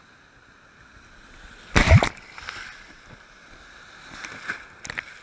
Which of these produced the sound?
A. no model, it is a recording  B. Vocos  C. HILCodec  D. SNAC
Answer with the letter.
A